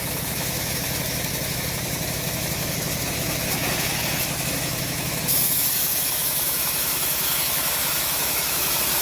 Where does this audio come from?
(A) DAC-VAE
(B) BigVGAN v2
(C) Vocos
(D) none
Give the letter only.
A